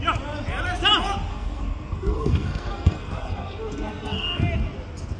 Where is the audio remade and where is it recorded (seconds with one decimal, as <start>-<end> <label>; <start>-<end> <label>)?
0.0-1.3 recorded; 1.3-4.4 remade; 4.4-5.2 recorded